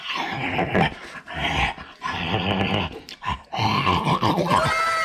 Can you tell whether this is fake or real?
real